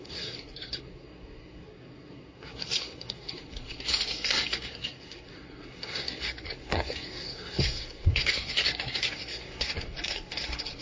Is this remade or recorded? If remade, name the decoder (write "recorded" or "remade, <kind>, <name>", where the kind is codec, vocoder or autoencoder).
remade, codec, SNAC